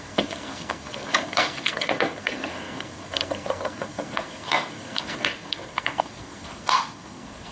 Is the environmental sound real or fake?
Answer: fake